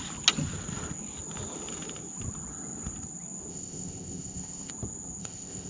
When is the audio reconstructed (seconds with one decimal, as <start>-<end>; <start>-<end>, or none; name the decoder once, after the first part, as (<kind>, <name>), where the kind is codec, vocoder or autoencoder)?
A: 3.5-4.7 (codec, ZipCodec); 5.2-5.7